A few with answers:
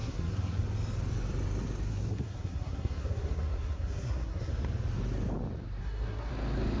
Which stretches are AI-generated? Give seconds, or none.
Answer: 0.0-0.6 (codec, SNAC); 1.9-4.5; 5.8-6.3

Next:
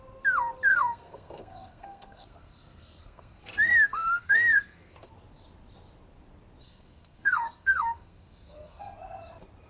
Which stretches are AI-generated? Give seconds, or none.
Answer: 0.7-5.1 (codec, SNAC); 6.6-8.8

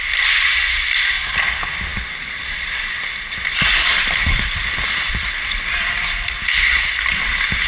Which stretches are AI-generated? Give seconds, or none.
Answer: 1.9-2.8 (vocoder, BigVGAN v2); 4.2-5.8

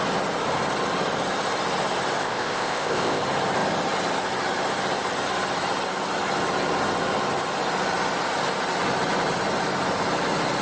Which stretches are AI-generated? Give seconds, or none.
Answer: 2.2-3.2 (codec, ZipCodec)

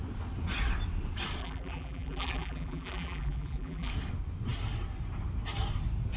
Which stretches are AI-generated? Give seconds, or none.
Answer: 1.4-3.9 (vocoder, BigVGAN v2)

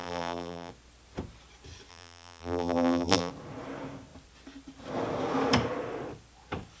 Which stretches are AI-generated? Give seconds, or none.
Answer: 0.0-0.7 (vocoder, BigVGAN v2); 1.9-3.3

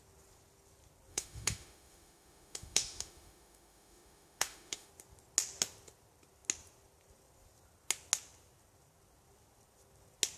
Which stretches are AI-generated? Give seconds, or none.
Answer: 1.1-4.9 (autoencoder, DAC-VAE)